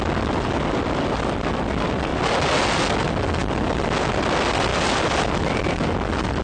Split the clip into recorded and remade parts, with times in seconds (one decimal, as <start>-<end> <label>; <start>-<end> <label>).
0.0-6.4 recorded